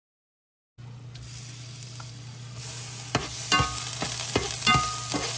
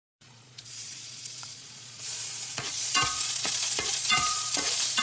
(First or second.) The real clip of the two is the first